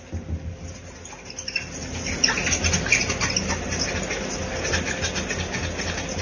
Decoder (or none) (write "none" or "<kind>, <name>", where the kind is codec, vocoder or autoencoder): none